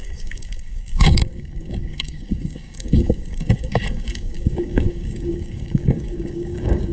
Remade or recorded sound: remade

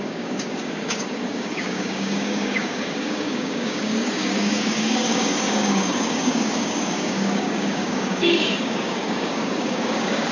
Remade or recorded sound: remade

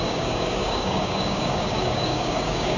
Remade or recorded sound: remade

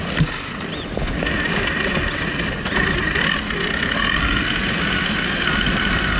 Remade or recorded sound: recorded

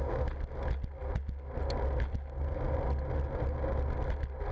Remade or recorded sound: recorded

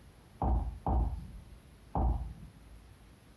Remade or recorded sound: recorded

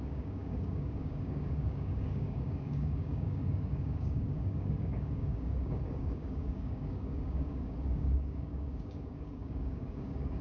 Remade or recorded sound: remade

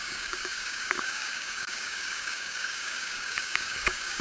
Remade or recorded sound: remade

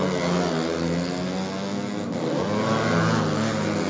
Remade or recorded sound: recorded